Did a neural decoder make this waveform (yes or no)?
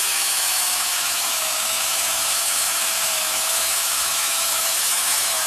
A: yes